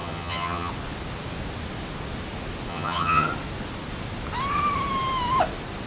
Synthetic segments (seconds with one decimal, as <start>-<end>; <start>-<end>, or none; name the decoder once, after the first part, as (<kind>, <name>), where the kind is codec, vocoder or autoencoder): 0.0-0.7 (vocoder, HiFi-GAN); 2.7-3.3